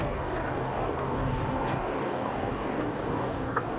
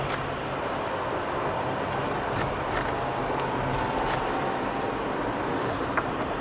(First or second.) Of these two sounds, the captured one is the second